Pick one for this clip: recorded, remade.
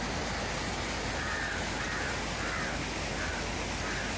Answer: recorded